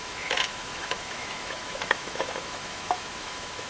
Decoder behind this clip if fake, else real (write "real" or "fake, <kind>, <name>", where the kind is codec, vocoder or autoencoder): fake, autoencoder, DAC-VAE